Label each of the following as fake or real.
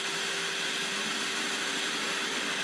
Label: real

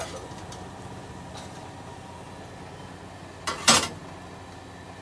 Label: real